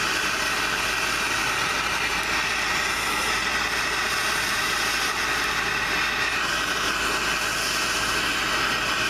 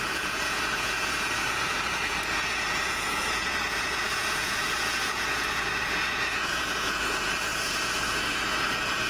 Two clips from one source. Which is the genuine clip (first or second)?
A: first